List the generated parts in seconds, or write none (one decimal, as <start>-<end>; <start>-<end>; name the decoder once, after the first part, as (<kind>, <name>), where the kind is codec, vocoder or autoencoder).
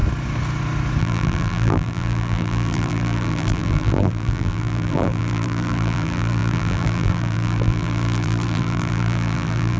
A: 1.0-9.8 (vocoder, BigVGAN v2)